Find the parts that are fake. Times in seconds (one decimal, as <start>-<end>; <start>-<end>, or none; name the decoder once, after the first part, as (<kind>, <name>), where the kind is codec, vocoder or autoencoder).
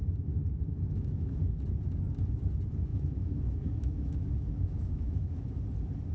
0.7-1.4 (autoencoder, DAC-VAE); 2.9-5.6